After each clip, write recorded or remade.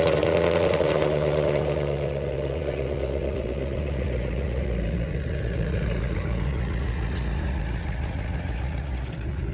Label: remade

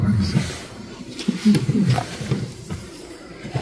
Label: remade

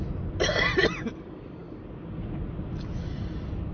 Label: recorded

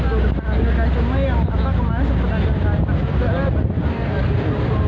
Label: recorded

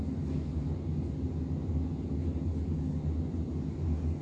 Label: recorded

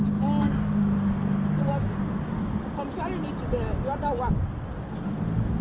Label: recorded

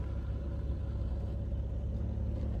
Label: recorded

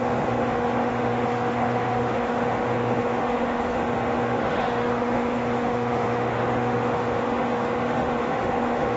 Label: remade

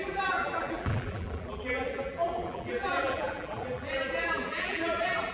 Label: remade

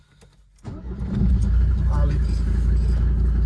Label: recorded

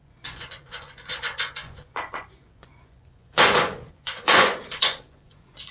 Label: remade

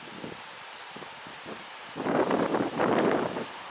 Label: recorded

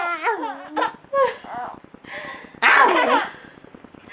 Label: recorded